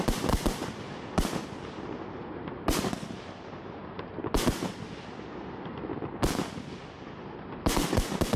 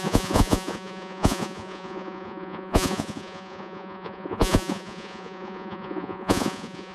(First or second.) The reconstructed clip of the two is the second